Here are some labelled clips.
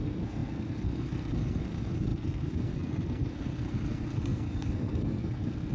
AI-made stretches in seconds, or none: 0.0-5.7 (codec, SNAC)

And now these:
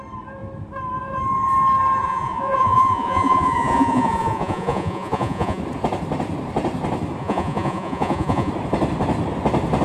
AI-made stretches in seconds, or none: 2.0-5.6 (vocoder, Vocos); 7.2-8.5

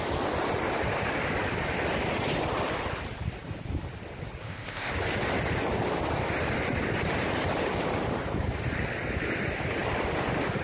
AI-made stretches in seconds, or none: 4.4-4.9 (codec, ZipCodec)

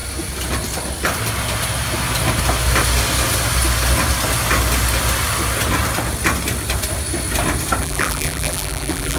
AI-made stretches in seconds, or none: 7.8-9.2 (vocoder, BigVGAN v2)

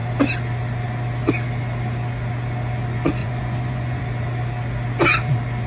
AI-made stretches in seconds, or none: 3.2-4.0 (vocoder, Vocos)

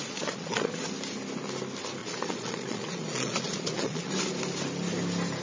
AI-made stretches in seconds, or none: 0.0-0.8 (vocoder, Vocos); 2.0-4.1

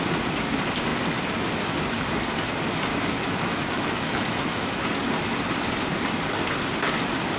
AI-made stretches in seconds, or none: 2.9-4.8 (autoencoder, DAC-VAE)